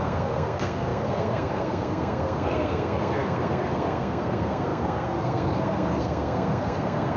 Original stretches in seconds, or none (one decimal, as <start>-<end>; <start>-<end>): none